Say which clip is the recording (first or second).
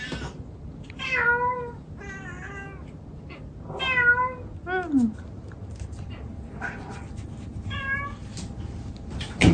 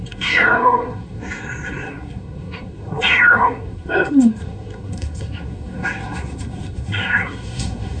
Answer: first